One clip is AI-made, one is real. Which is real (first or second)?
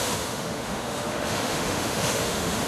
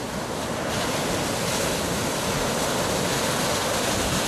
second